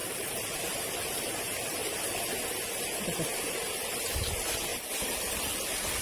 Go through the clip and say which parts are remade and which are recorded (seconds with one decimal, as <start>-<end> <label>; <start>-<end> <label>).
0.0-4.7 recorded; 4.7-5.5 remade; 5.5-6.0 recorded